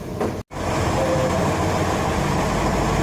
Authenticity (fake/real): real